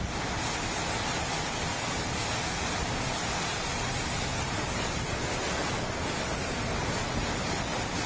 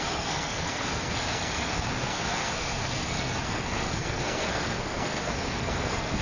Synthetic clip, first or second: second